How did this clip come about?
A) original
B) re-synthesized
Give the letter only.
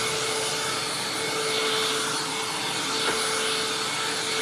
A